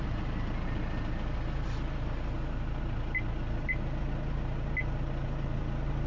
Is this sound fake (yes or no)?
no